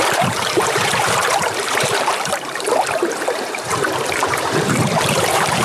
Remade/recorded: remade